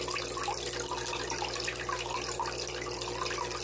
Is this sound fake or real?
real